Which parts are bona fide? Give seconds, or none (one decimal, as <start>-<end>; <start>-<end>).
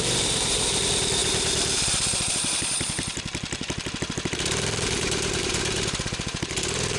none